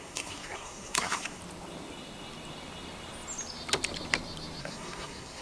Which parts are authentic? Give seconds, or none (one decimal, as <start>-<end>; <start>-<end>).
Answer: 1.4-4.6